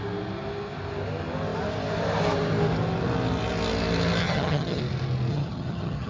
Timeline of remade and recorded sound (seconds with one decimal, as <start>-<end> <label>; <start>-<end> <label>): 0.0-4.2 recorded; 4.2-4.8 remade; 4.8-5.3 recorded; 5.3-6.1 remade